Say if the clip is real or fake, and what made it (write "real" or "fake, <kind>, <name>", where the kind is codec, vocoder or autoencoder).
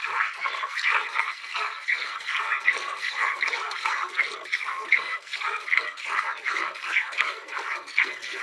fake, codec, SNAC